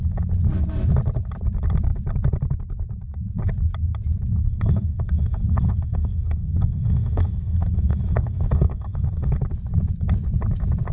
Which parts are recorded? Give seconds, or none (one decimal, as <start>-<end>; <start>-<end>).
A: 0.0-4.4; 9.3-10.9